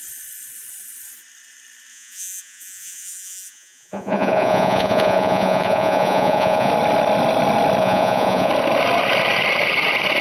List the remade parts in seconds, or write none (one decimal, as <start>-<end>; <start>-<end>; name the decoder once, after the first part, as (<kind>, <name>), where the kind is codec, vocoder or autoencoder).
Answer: 1.9-6.7 (vocoder, Vocos); 7.8-8.5